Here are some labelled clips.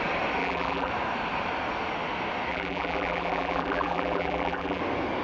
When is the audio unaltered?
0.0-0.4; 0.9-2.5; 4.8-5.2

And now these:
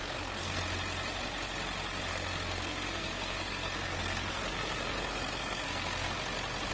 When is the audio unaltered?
0.6-2.1; 6.1-6.7